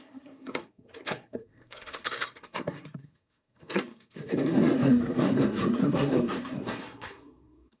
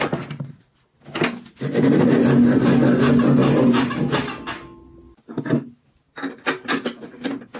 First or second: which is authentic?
second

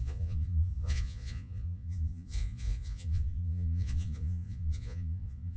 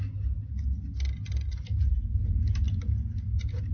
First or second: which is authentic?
second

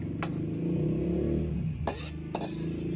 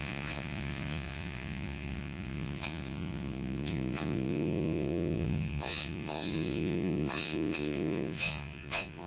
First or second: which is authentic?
first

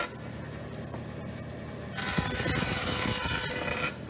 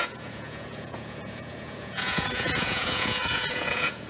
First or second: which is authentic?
first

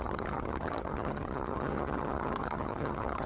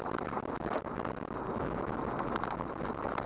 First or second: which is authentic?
second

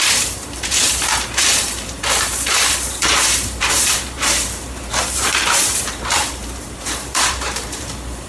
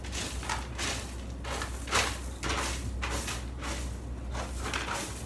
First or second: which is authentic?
second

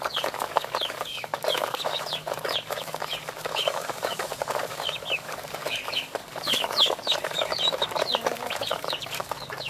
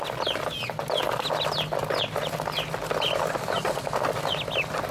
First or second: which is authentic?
second